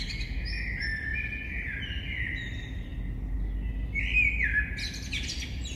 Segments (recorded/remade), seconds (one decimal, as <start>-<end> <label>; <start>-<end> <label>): 0.0-5.8 recorded